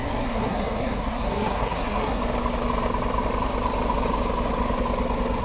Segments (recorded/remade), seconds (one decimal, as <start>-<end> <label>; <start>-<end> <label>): 0.0-2.2 remade; 2.2-5.4 recorded